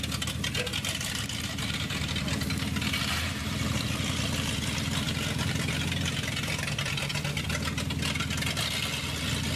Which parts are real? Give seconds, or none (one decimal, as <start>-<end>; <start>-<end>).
0.0-0.7; 5.8-9.6